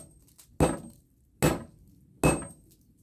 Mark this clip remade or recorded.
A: recorded